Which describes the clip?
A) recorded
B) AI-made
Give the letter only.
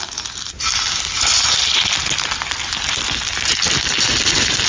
B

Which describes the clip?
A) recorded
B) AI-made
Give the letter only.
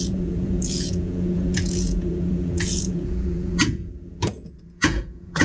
B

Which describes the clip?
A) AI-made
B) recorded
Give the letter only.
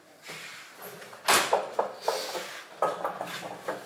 B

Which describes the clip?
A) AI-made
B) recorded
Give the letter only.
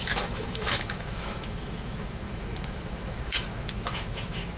A